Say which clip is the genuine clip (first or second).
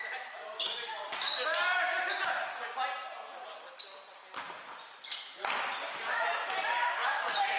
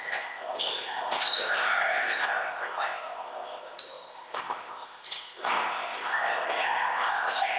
first